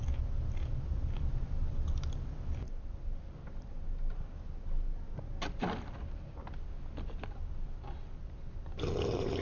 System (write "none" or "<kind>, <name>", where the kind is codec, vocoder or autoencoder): none